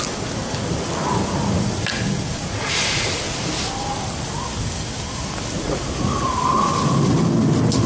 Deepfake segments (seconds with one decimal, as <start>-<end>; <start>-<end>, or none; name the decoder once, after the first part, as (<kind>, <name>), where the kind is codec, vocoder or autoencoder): 2.4-3.2 (vocoder, Vocos); 5.6-6.3